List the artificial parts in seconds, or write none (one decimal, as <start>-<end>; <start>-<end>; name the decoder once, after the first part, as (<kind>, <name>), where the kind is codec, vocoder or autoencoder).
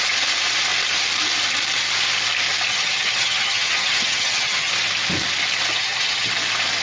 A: 2.7-4.7 (vocoder, HiFi-GAN); 5.7-6.3